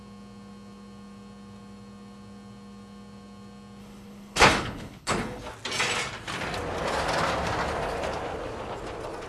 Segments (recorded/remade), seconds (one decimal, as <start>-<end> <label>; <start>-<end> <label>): 0.0-3.8 recorded; 3.8-5.4 remade; 5.4-9.3 recorded